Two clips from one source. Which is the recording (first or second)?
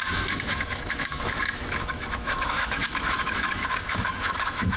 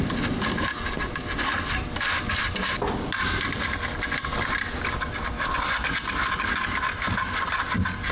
second